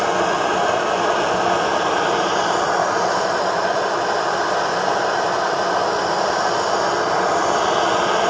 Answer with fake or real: real